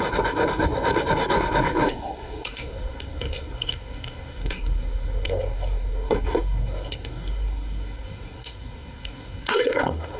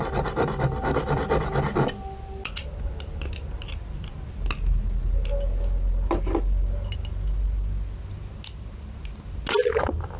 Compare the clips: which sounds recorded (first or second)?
second